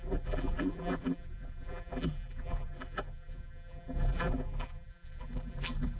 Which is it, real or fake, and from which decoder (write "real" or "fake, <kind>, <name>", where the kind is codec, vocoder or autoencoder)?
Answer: fake, vocoder, BigVGAN v2